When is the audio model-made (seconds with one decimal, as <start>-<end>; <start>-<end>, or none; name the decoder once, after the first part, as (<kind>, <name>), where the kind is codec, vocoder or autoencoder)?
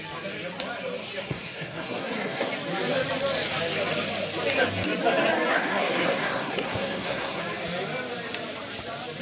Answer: 1.2-2.5 (codec, SNAC); 5.5-7.4